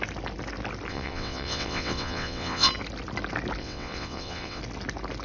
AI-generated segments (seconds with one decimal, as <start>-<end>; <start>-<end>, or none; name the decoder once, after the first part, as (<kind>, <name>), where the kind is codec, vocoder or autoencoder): 0.9-2.7 (vocoder, WaveNeXt); 3.6-4.6